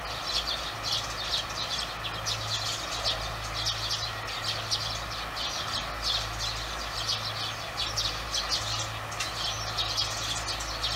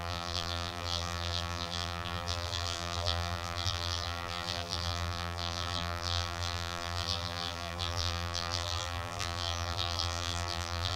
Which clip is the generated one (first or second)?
second